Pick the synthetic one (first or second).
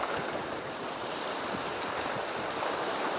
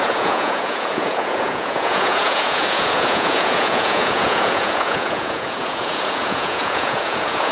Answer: second